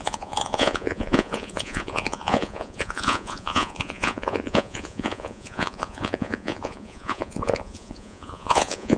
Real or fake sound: fake